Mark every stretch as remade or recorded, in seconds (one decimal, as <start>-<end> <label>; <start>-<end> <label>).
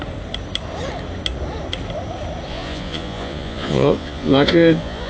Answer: 0.0-2.5 recorded; 2.5-5.1 remade